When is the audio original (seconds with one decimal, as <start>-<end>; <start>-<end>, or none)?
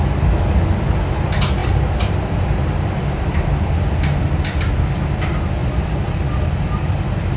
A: 0.0-5.6; 7.0-7.4